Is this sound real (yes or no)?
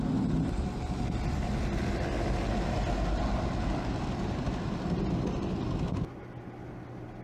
yes